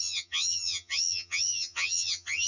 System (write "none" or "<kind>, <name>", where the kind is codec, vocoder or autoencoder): vocoder, HiFi-GAN